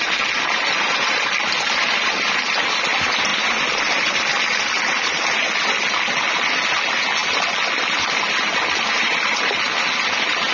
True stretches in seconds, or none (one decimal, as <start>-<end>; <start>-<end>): 0.0-10.5